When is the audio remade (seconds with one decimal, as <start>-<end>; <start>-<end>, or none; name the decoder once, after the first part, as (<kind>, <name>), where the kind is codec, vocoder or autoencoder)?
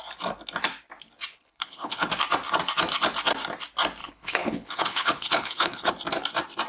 1.3-2.1 (codec, HILCodec); 4.0-5.9